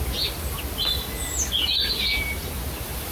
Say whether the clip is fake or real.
real